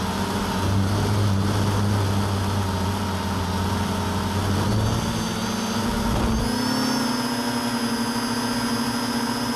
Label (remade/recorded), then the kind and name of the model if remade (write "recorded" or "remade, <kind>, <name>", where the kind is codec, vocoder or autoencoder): recorded